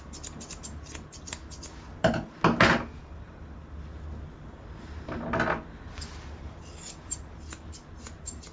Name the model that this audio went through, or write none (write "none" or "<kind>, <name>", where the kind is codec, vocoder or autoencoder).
none